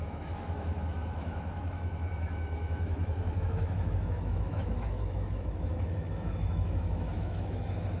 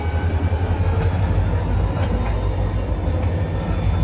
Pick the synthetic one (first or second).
first